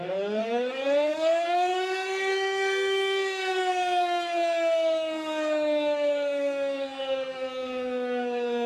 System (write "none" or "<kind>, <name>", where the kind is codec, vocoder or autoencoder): codec, SNAC